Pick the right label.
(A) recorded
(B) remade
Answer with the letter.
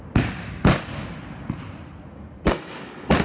A